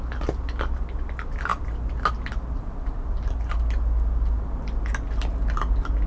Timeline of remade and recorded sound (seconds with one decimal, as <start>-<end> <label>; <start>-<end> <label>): 0.0-6.1 recorded